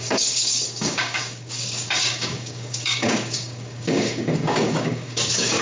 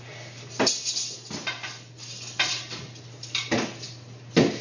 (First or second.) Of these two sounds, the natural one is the second